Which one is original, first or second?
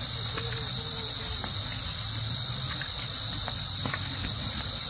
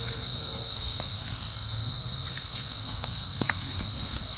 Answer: first